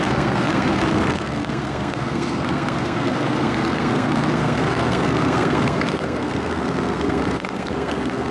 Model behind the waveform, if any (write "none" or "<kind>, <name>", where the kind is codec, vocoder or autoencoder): codec, SNAC